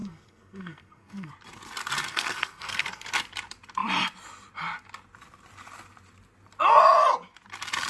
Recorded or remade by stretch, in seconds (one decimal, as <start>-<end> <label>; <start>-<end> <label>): 0.0-1.3 remade; 1.3-2.1 recorded; 2.1-3.1 remade; 3.1-7.9 recorded